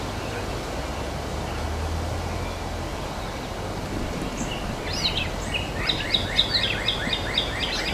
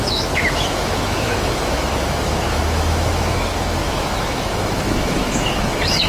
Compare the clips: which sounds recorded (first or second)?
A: first